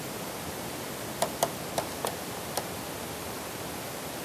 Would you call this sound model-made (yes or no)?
no